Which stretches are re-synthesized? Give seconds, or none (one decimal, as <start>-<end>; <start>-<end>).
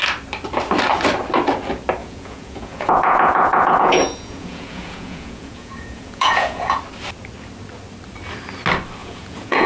2.0-6.8; 9.0-9.7